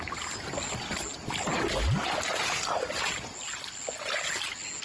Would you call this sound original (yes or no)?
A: yes